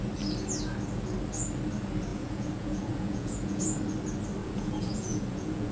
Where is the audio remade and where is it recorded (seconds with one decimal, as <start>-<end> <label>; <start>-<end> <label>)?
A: 0.0-2.1 recorded; 2.1-3.8 remade; 3.8-4.4 recorded; 4.4-5.7 remade